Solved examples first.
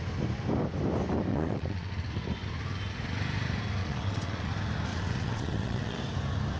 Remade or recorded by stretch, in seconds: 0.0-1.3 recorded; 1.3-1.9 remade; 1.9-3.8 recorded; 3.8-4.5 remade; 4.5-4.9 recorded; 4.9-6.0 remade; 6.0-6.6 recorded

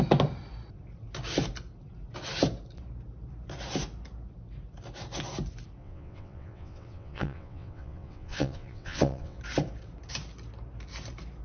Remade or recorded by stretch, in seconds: 0.0-5.8 recorded; 5.8-9.4 remade; 9.4-11.4 recorded

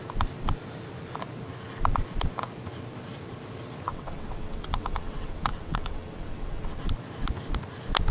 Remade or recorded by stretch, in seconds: 0.0-3.9 recorded; 3.9-6.8 remade; 6.8-8.1 recorded

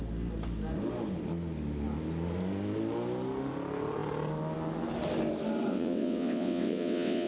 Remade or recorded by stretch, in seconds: 0.0-5.7 recorded; 5.7-7.3 remade

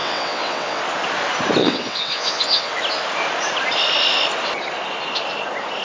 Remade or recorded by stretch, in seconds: 0.0-0.8 remade; 0.8-1.6 recorded; 1.6-2.7 remade; 2.7-5.8 recorded